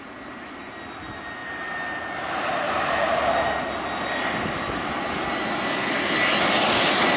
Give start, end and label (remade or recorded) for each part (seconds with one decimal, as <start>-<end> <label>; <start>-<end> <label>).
0.0-7.2 recorded